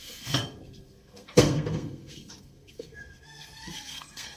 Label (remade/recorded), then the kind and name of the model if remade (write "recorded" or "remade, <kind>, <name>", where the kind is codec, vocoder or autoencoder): remade, codec, SNAC